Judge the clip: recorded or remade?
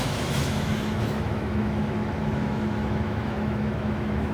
remade